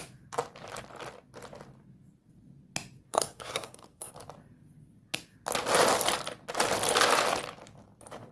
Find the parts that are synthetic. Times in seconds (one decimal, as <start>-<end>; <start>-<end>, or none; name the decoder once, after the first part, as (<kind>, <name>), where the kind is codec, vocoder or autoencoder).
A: 3.1-4.1 (codec, SNAC)